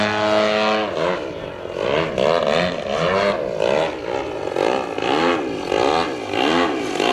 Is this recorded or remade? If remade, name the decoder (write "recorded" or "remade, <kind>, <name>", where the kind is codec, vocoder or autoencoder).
recorded